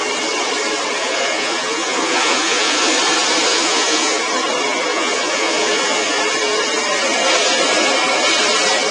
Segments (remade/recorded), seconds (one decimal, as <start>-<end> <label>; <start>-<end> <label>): 0.0-1.0 recorded; 1.0-2.9 remade; 2.9-3.5 recorded; 3.5-4.2 remade; 4.2-4.9 recorded; 4.9-6.2 remade; 6.2-8.9 recorded